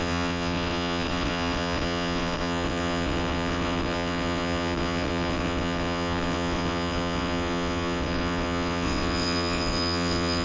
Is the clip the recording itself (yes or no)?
no